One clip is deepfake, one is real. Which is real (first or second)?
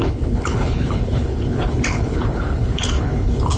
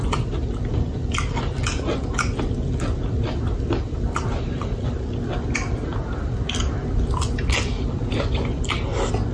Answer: second